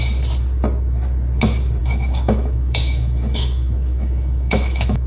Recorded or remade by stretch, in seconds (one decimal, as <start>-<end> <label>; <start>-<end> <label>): 0.0-1.8 recorded; 1.8-5.1 remade